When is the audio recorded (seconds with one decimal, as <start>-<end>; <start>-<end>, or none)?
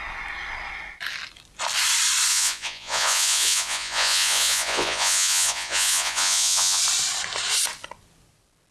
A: 0.0-2.3; 6.8-8.7